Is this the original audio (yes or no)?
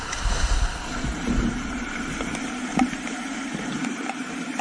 no